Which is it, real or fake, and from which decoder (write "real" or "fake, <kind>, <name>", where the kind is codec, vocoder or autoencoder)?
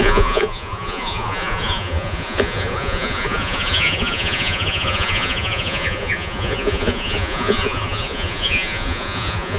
fake, vocoder, Vocos